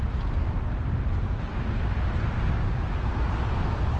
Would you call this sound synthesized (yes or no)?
no